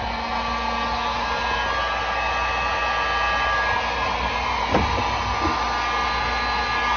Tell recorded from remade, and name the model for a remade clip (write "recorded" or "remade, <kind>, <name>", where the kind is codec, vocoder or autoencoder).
recorded